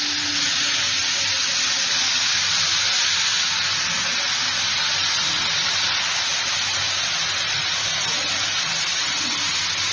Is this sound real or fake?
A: real